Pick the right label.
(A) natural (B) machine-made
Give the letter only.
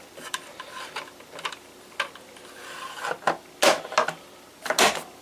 A